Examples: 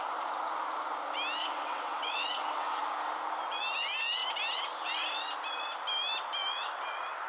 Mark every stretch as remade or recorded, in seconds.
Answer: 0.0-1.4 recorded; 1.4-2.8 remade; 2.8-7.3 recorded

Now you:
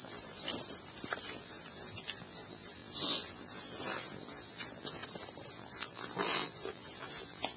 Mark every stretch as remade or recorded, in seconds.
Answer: 0.0-0.5 remade; 0.5-1.2 recorded; 1.2-5.0 remade; 5.0-5.5 recorded; 5.5-7.6 remade

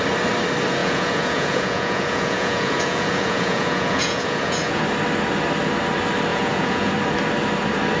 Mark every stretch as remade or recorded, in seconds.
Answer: 0.0-0.8 recorded; 0.8-4.8 remade; 4.8-6.3 recorded; 6.3-6.9 remade; 6.9-8.0 recorded

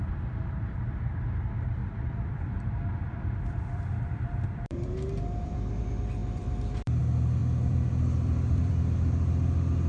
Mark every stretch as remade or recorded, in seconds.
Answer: 0.0-1.8 recorded; 1.8-5.8 remade; 5.8-6.2 recorded; 6.2-7.0 remade; 7.0-7.4 recorded; 7.4-8.7 remade; 8.7-9.9 recorded

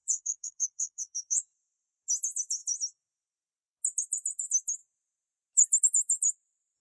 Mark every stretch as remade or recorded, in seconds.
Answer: 0.0-1.4 remade; 1.4-6.8 recorded

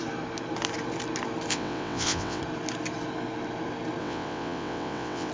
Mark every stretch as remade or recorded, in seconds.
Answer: 0.0-1.5 recorded; 1.5-2.4 remade; 2.4-4.0 recorded; 4.0-5.3 remade

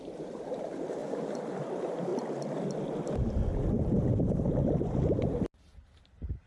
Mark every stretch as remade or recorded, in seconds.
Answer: 0.0-1.0 remade; 1.0-1.6 recorded; 1.6-2.1 remade; 2.1-5.3 recorded; 5.3-6.5 remade